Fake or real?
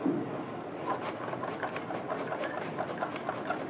real